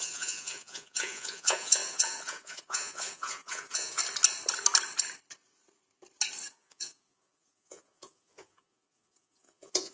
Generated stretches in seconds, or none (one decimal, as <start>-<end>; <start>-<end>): 0.0-4.0; 6.5-9.9